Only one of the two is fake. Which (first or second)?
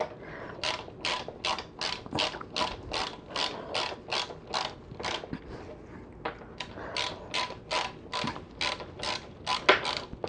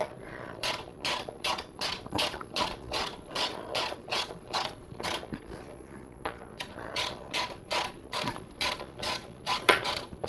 second